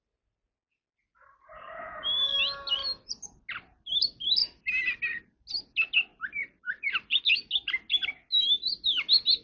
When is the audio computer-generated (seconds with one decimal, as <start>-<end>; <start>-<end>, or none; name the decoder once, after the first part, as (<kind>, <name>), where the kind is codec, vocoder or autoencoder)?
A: 6.1-7.2 (vocoder, BigVGAN v2)